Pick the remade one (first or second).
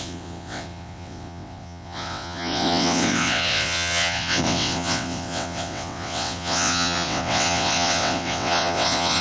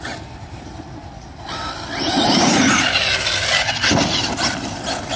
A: first